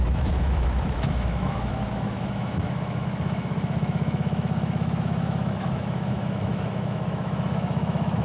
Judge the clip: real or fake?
fake